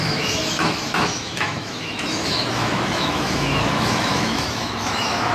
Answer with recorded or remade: remade